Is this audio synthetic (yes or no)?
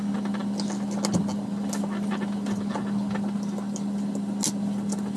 no